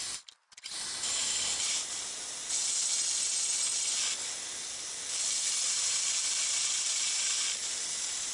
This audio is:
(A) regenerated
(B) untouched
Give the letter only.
B